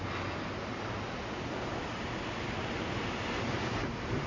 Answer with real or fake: real